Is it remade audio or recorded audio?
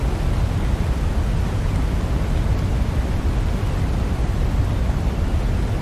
recorded